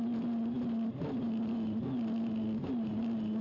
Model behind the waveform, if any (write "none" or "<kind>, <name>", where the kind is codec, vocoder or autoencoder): none